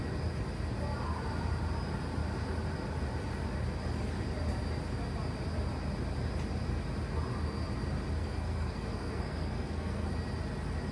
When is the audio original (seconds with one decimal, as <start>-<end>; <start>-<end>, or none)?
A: 0.0-8.2; 10.1-10.9